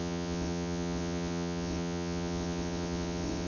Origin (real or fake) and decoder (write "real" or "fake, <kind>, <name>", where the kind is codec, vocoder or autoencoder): fake, vocoder, WaveNeXt